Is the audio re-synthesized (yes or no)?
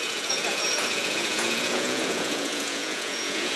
yes